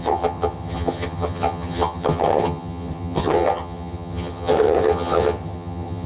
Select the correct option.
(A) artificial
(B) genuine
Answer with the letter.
A